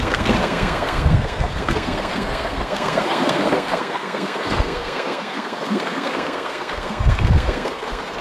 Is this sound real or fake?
fake